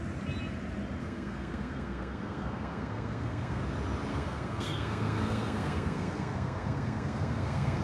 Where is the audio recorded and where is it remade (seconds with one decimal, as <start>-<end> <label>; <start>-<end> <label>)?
0.0-1.0 recorded; 1.0-3.6 remade; 3.6-4.1 recorded; 4.1-7.8 remade